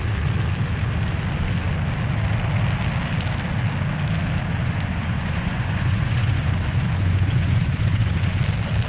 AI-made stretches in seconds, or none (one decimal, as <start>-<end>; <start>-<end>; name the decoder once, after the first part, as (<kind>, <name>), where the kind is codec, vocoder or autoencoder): 4.6-8.4 (vocoder, Vocos)